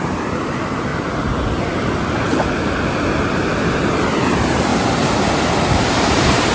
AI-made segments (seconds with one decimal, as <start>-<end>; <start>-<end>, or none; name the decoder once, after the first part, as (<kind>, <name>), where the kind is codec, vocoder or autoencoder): 0.0-0.9 (vocoder, BigVGAN v2); 3.8-4.7; 5.8-6.5